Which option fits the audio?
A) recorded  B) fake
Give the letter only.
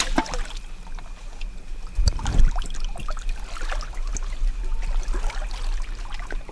A